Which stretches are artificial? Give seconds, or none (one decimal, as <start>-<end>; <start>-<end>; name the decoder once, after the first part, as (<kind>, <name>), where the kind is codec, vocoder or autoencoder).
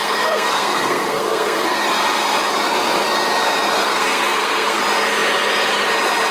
0.0-1.8 (codec, SNAC); 3.8-4.8